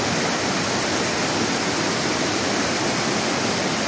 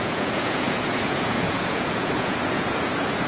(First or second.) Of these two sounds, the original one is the first